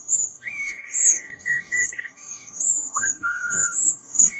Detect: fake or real fake